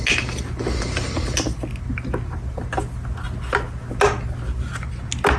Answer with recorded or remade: recorded